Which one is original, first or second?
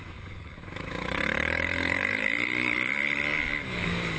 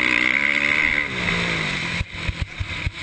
second